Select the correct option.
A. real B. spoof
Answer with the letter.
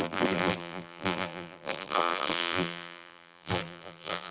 B